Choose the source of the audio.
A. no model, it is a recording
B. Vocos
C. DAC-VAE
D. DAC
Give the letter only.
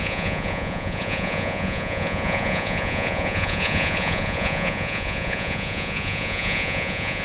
B